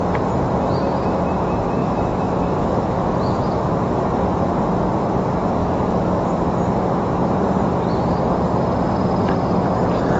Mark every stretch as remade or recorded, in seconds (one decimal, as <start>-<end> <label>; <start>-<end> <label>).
0.0-1.8 recorded; 1.8-3.4 remade; 3.4-5.6 recorded; 5.6-6.3 remade; 6.3-10.2 recorded